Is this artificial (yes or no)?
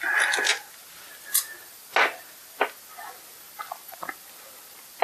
no